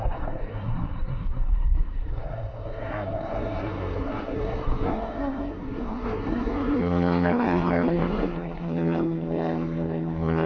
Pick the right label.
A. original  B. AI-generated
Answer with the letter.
B